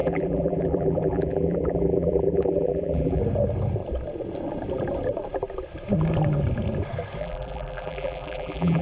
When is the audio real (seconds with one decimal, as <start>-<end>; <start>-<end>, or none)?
3.2-7.2